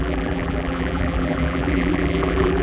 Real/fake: fake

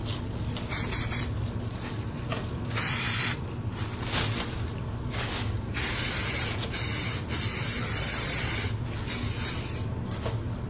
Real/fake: real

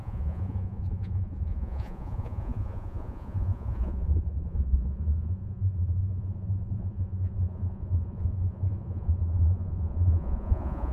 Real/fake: fake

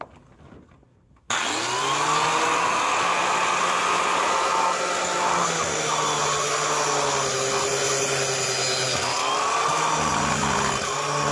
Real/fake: real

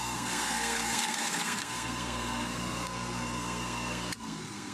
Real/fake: fake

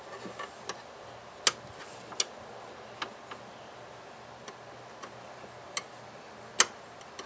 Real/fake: real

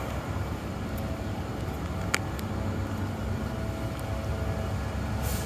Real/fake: real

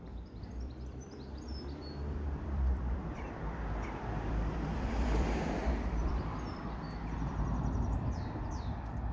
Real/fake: fake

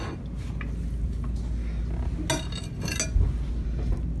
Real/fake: real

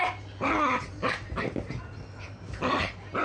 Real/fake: real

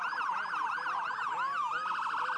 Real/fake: real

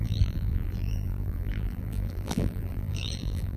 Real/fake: fake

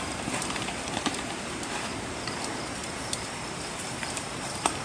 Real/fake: fake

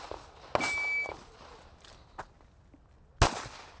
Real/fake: real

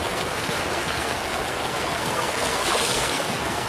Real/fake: fake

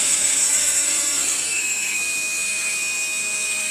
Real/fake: fake